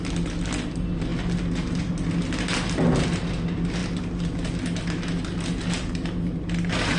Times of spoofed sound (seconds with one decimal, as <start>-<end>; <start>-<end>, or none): none